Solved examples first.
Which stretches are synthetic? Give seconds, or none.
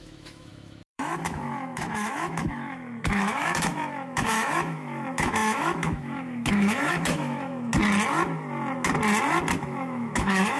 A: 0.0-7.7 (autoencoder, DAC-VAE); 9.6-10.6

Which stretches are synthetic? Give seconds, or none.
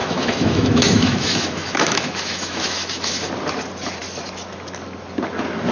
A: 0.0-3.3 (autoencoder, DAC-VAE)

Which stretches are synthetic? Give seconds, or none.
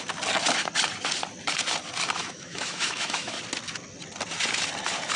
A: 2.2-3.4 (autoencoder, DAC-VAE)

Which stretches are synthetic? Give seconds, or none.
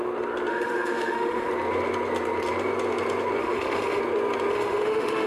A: 0.5-1.5 (autoencoder, DAC-VAE); 3.4-4.0; 4.5-5.3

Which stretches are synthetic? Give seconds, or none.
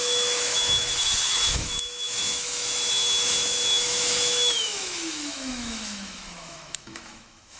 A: 0.0-7.6 (autoencoder, DAC-VAE)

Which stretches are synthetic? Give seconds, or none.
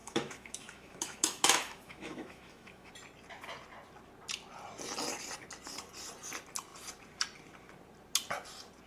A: 0.0-2.9 (autoencoder, DAC-VAE)